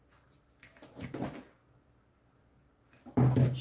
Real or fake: real